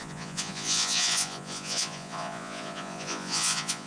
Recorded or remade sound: remade